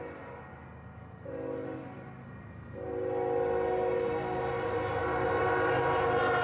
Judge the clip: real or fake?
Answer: real